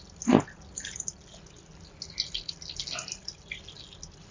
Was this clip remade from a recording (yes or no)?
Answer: no